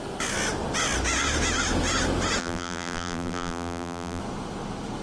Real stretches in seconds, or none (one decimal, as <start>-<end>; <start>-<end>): 0.0-2.4; 4.2-5.0